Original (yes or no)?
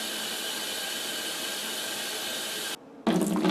yes